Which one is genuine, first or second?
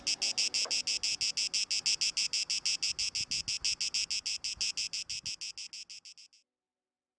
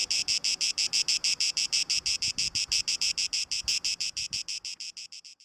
first